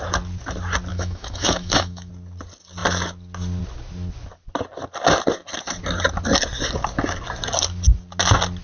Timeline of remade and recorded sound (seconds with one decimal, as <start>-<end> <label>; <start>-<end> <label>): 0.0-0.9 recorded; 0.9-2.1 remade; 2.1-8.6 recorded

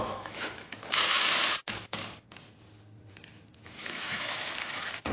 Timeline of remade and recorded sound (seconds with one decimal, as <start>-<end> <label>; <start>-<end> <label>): 0.0-0.7 remade; 0.7-3.8 recorded; 3.8-5.1 remade

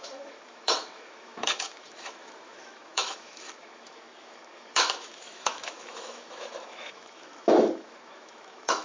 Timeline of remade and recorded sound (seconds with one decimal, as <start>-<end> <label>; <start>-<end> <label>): 0.0-8.8 remade

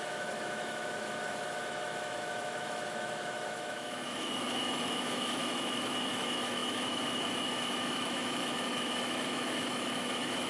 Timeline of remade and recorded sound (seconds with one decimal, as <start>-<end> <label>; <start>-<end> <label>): 0.0-10.5 remade

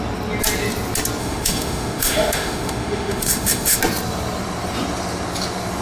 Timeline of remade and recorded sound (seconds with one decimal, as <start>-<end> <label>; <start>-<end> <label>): 0.0-1.2 recorded; 1.2-3.8 remade; 3.8-5.8 recorded